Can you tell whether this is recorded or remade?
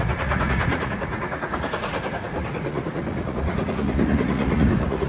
remade